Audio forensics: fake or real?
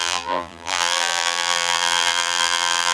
fake